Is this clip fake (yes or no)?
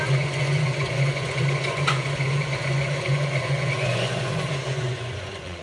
yes